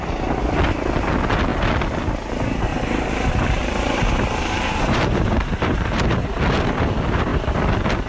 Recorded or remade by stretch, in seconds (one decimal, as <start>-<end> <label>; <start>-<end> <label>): 0.0-2.7 recorded; 2.7-6.4 remade; 6.4-8.1 recorded